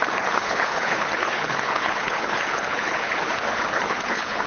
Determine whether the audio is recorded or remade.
remade